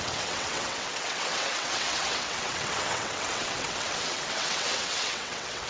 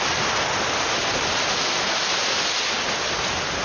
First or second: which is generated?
first